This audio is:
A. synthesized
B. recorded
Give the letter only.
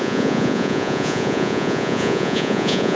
A